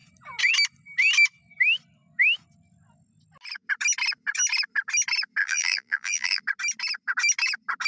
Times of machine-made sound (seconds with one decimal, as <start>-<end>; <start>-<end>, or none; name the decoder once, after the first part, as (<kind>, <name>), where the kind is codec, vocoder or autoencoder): 5.4-6.4 (vocoder, BigVGAN v2)